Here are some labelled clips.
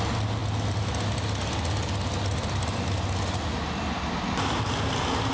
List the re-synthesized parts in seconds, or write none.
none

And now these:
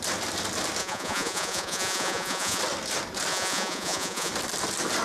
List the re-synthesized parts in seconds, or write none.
0.8-2.6 (vocoder, Vocos); 3.3-4.3

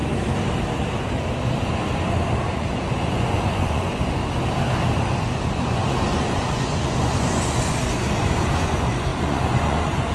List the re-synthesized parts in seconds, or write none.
2.5-4.2 (vocoder, Vocos); 5.2-10.1

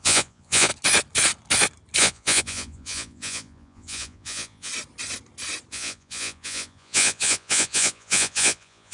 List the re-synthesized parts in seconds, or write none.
0.0-0.7 (vocoder, Vocos); 2.0-4.7; 5.7-8.9